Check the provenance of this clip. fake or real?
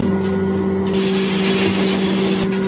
real